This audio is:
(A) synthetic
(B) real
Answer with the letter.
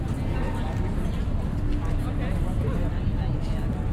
B